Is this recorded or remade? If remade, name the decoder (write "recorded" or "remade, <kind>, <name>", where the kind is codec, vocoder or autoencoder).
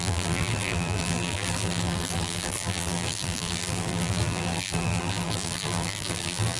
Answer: remade, vocoder, BigVGAN v2